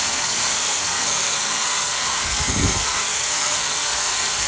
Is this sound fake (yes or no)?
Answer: yes